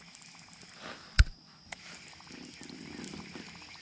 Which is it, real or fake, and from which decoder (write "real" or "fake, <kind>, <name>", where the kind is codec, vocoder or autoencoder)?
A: real